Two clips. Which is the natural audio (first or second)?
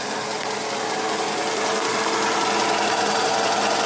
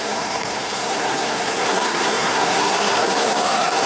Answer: first